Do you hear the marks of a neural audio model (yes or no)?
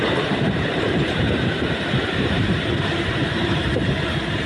yes